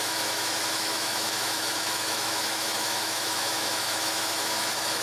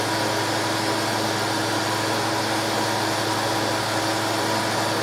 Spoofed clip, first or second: first